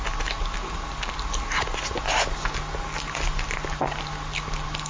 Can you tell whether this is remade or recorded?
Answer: recorded